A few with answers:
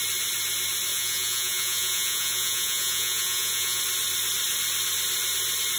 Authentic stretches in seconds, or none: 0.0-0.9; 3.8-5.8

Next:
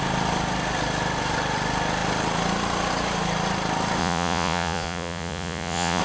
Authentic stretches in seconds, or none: 0.0-4.0